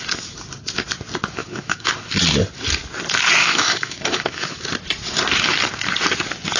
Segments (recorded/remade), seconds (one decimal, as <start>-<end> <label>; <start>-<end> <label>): 0.0-1.4 recorded; 1.4-1.9 remade; 1.9-3.4 recorded; 3.4-4.6 remade; 4.6-6.6 recorded